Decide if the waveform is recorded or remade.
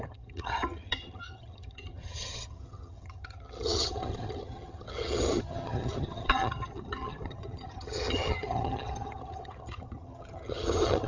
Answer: remade